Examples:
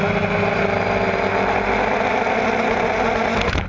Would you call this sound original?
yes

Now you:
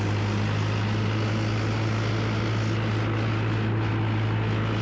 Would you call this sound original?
yes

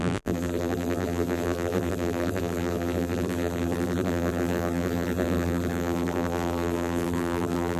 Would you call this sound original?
no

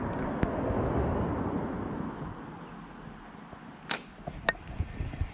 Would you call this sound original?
yes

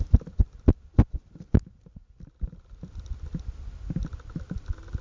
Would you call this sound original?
yes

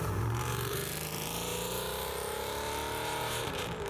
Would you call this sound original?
no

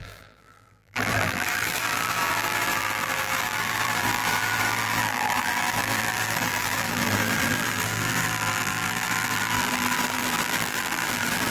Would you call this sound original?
no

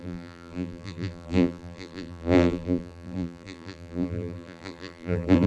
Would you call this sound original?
no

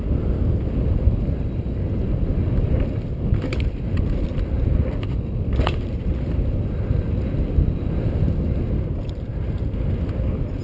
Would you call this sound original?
yes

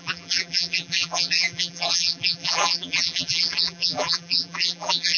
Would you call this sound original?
no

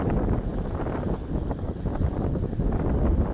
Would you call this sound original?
yes